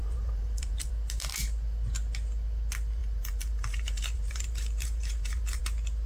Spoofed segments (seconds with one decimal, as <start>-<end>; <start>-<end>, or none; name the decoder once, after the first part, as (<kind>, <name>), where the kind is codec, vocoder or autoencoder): 0.0-0.9 (vocoder, BigVGAN v2); 3.0-5.6